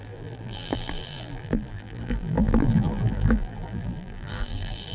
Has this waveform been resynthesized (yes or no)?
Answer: yes